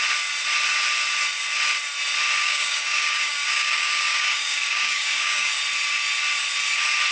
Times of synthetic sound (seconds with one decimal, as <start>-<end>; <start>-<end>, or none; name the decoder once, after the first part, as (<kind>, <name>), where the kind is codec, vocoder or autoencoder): 2.4-5.5 (codec, DAC)